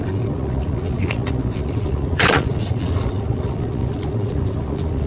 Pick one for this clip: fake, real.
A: fake